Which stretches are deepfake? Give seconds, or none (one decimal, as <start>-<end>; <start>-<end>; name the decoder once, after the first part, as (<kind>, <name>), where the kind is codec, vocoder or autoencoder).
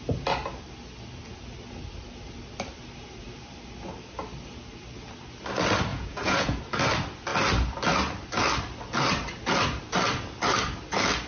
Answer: 5.9-6.6 (vocoder, Vocos)